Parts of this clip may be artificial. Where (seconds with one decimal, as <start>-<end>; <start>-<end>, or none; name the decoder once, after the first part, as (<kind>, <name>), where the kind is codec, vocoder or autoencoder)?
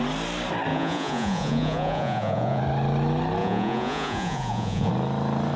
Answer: 0.7-2.6 (vocoder, Vocos); 3.4-4.9